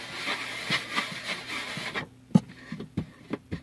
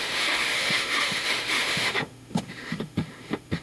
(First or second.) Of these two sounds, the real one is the first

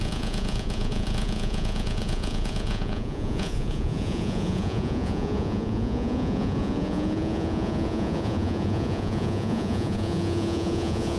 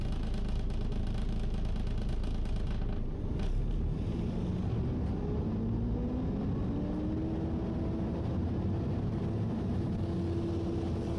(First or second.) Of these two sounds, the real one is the second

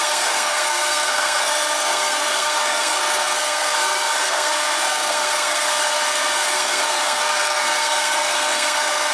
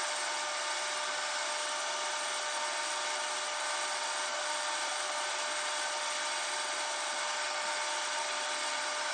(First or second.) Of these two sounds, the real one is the second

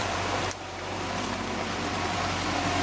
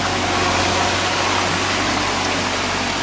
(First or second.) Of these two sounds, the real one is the second